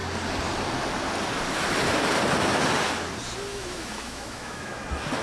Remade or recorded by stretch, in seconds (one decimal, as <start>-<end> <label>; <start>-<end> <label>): 0.0-3.5 recorded; 3.5-4.8 remade; 4.8-5.2 recorded